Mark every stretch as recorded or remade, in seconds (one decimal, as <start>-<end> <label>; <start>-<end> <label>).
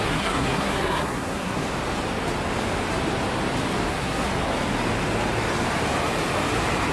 0.0-1.6 remade; 1.6-3.9 recorded; 3.9-4.3 remade; 4.3-6.9 recorded